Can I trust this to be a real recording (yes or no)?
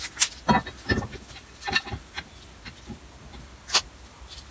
yes